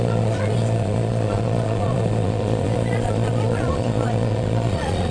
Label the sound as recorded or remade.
remade